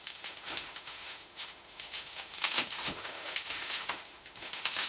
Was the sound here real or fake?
fake